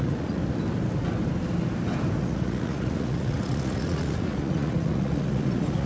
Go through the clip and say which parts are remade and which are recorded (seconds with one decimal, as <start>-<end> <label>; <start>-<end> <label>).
0.0-0.4 remade; 0.4-2.2 recorded; 2.2-5.9 remade